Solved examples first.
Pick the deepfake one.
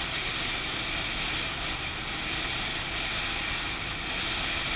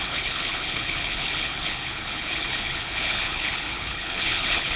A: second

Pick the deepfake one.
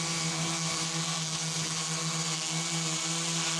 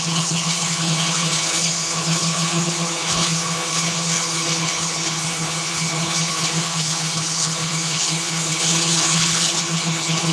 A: second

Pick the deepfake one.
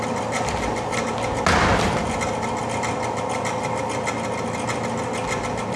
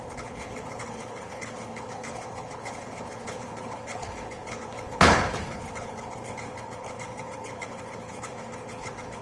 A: second